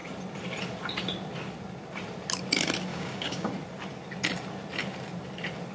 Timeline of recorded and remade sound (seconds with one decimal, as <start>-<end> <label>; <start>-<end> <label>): 0.0-2.9 recorded; 2.9-3.5 remade; 3.5-5.7 recorded